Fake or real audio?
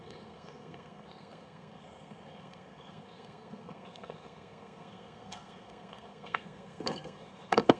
fake